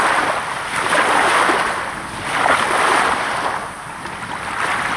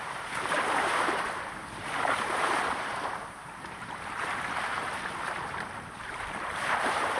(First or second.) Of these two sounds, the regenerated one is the second